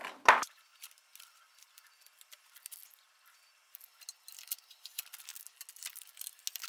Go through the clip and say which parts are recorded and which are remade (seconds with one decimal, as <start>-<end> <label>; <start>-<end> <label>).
0.0-6.7 recorded

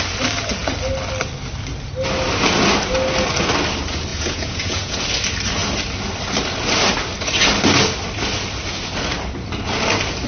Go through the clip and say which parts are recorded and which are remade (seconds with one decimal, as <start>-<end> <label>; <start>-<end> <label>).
0.0-4.1 recorded; 4.1-5.0 remade; 5.0-10.3 recorded

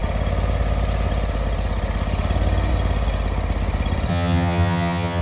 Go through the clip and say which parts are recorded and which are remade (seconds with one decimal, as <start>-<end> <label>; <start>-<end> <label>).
0.0-4.1 recorded; 4.1-5.2 remade

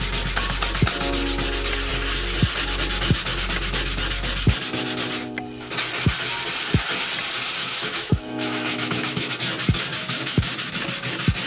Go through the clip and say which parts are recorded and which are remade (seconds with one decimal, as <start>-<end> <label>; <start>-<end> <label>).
0.0-7.6 recorded; 7.6-9.3 remade; 9.3-9.9 recorded; 9.9-10.7 remade; 10.7-11.5 recorded

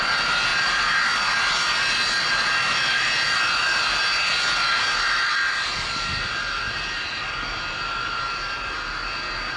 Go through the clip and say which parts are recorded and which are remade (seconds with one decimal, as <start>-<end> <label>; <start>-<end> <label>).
0.0-9.6 recorded

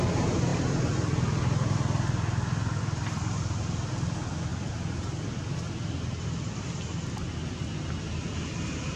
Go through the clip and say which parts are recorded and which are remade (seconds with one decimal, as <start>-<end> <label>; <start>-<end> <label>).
0.0-9.0 recorded

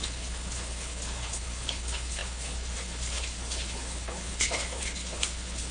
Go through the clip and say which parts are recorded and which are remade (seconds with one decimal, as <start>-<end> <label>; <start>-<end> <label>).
0.0-5.7 remade

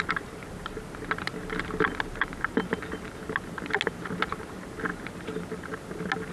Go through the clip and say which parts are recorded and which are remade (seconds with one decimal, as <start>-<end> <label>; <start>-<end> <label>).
0.0-6.3 recorded